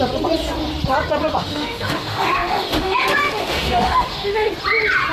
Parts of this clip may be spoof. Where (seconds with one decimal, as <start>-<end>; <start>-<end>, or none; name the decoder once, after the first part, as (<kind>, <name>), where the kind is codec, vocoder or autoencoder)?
1.4-4.5 (autoencoder, DAC-VAE)